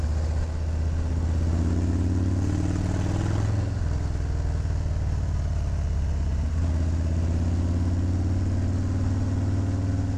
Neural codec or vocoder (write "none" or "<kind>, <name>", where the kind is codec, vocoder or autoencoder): none